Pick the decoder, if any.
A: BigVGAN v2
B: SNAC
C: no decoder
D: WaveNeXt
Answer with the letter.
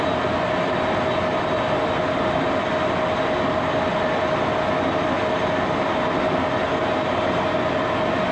C